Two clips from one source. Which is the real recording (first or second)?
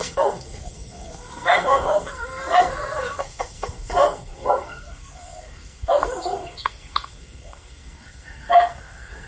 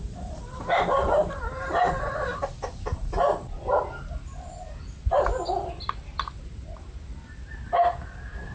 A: second